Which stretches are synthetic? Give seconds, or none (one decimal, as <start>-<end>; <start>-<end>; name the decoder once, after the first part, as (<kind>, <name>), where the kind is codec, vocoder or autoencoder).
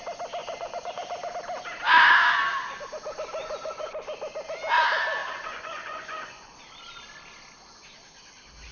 0.4-1.3 (vocoder, Vocos); 3.4-3.9; 5.2-6.6